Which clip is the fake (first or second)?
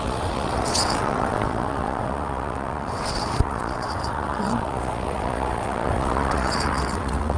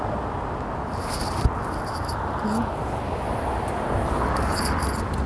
first